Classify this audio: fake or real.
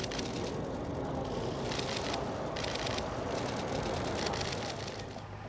real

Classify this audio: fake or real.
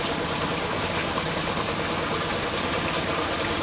real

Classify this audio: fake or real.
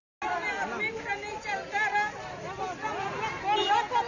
real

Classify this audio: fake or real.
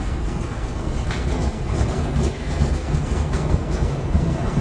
fake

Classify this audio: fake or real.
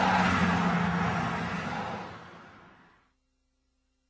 real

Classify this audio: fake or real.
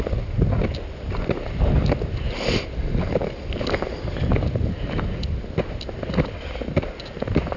real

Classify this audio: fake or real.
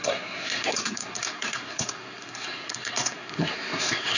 fake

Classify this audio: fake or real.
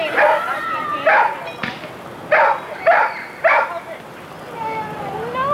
real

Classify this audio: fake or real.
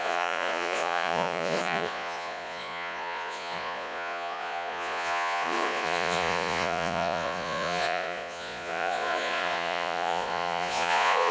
fake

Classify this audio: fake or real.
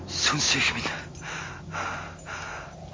real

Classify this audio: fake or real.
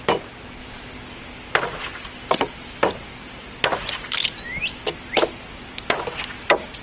real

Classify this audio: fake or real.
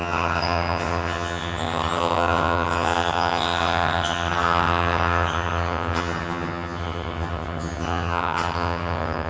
fake